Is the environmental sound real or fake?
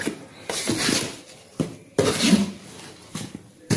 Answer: real